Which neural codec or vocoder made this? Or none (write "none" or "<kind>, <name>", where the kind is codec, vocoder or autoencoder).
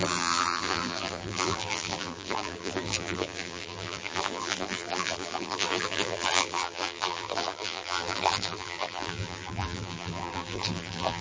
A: vocoder, BigVGAN v2